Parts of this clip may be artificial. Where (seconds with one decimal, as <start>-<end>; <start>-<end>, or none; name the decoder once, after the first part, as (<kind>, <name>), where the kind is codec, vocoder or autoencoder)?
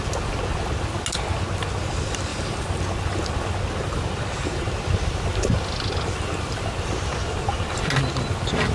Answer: 2.3-2.8 (vocoder, BigVGAN v2)